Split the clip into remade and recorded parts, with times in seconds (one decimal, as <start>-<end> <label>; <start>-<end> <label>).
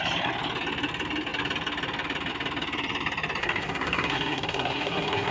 0.0-3.4 recorded; 3.4-5.3 remade